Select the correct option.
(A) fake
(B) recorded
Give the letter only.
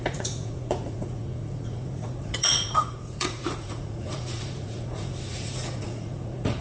A